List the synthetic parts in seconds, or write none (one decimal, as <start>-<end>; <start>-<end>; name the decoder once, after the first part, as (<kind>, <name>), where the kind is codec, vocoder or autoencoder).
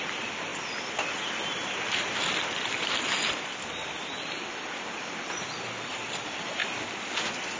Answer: 0.0-0.5 (vocoder, BigVGAN v2); 4.3-6.6